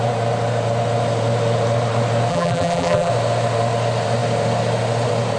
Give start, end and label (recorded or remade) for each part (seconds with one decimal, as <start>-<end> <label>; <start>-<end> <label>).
0.0-2.3 recorded; 2.3-3.1 remade; 3.1-5.4 recorded